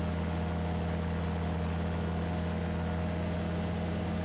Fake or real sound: real